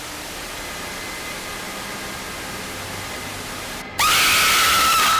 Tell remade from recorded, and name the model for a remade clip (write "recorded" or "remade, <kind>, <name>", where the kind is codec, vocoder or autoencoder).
recorded